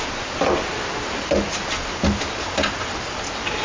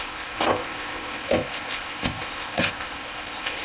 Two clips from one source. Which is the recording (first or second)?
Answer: first